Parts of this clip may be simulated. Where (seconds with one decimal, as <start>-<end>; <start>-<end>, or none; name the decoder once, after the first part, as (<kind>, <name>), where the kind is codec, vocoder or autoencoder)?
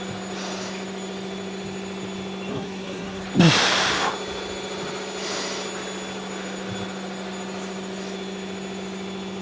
2.5-3.2 (codec, SNAC)